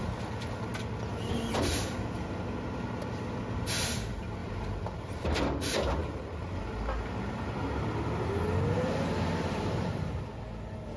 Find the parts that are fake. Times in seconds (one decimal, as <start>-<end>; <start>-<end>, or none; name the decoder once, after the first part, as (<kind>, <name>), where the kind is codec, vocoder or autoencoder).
4.4-5.4 (vocoder, BigVGAN v2); 6.0-6.8

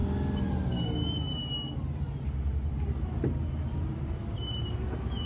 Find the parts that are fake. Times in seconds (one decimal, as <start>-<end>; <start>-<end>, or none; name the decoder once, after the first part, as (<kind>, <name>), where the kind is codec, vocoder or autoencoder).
1.7-5.3 (vocoder, BigVGAN v2)

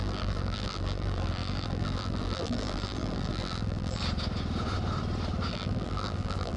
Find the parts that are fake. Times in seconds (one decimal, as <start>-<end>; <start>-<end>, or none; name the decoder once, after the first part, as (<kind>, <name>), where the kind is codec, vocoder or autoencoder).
0.0-4.0 (vocoder, BigVGAN v2); 5.5-6.6

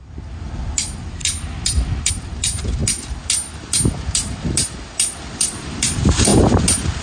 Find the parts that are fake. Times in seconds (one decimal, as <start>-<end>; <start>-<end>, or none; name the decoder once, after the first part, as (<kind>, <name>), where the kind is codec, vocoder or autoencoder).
0.0-1.2 (vocoder, BigVGAN v2); 2.1-2.8; 5.3-6.3

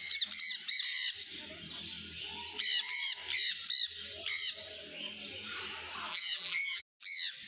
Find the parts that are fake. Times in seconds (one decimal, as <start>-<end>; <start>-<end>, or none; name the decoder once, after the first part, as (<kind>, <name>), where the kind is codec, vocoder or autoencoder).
6.1-6.8 (vocoder, BigVGAN v2)

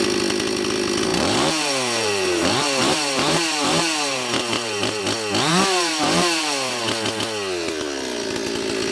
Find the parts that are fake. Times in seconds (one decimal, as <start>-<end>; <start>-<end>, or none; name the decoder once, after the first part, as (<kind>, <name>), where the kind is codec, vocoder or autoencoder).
1.1-5.0 (vocoder, BigVGAN v2); 5.5-6.8

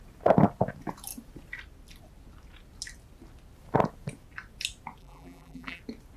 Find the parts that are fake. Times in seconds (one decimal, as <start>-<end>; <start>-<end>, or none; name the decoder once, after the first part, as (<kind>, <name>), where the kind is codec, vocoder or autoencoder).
5.0-5.8 (vocoder, BigVGAN v2)